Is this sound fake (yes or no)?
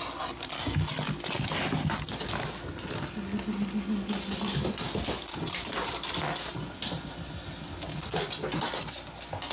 no